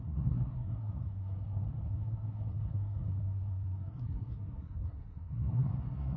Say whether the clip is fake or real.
fake